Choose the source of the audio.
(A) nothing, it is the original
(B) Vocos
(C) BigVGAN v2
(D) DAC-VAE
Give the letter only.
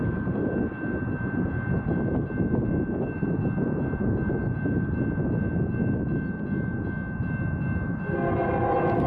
A